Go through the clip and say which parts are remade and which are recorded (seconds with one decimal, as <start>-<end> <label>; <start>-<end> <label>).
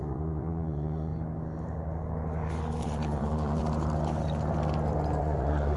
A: 0.0-1.1 remade; 1.1-2.8 recorded; 2.8-3.6 remade; 3.6-5.2 recorded; 5.2-5.8 remade